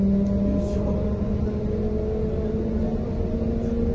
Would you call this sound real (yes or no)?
yes